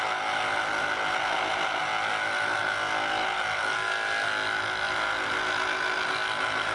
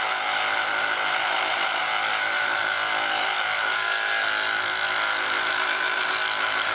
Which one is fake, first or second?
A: second